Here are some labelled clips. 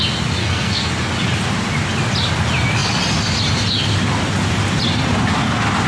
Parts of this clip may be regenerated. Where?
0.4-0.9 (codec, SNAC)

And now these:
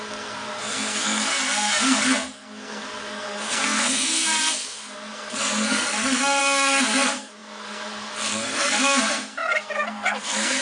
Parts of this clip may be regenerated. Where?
0.0-10.6 (codec, SNAC)

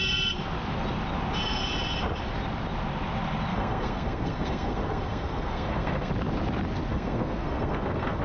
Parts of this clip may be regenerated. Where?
3.5-6.1 (codec, SNAC); 6.9-8.2

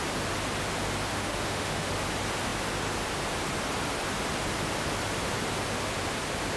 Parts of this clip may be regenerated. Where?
1.1-1.9 (autoencoder, DAC-VAE)

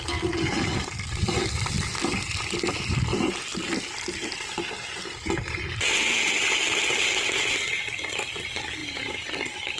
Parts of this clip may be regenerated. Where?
none